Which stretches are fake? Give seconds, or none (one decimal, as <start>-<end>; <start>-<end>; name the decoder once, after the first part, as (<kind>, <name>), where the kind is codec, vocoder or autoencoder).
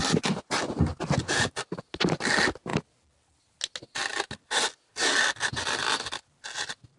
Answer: none